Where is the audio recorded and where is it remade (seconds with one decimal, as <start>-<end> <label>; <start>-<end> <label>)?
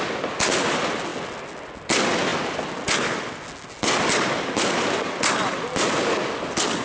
0.0-6.8 recorded